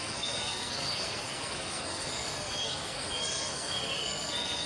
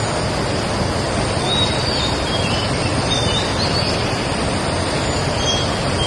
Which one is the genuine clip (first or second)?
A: second